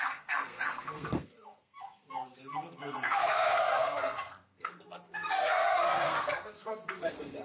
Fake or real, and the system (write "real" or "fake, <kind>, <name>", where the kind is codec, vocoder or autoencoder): fake, codec, SNAC